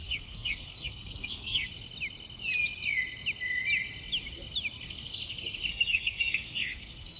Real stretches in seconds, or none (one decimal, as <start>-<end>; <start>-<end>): 1.7-5.7